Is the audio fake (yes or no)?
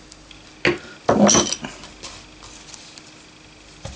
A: no